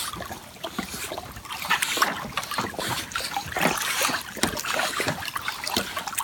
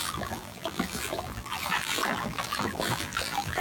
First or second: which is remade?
second